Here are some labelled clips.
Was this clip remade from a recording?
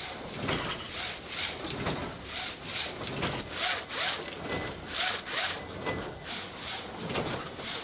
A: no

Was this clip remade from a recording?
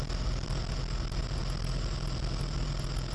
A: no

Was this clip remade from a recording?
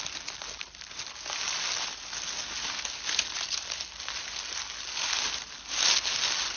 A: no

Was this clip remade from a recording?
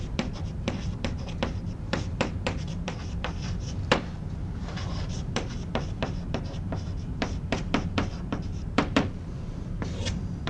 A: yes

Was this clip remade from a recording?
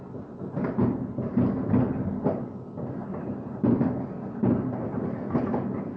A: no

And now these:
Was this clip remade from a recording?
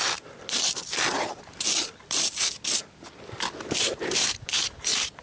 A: yes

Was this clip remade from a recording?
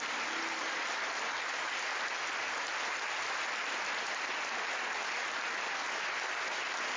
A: no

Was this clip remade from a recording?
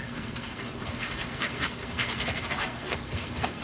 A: yes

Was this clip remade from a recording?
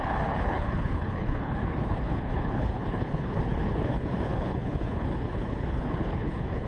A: yes